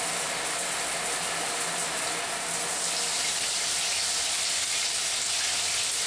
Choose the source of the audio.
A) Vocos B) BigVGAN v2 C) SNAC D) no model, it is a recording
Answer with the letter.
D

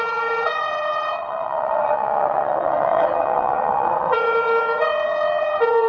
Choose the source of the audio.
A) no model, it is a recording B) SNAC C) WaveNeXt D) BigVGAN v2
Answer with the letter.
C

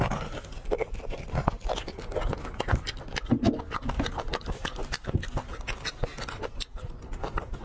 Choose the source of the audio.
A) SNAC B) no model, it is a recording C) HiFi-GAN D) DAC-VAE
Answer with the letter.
B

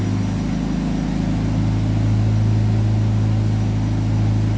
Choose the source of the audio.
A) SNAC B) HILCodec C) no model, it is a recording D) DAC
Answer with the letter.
C